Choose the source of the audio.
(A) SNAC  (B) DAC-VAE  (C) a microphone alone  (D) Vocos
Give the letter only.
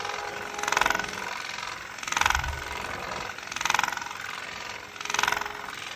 C